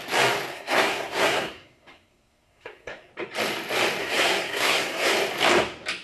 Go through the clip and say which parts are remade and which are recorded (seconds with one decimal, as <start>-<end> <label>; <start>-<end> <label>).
0.0-0.5 recorded; 0.5-3.1 remade; 3.1-4.0 recorded; 4.0-5.1 remade; 5.1-6.0 recorded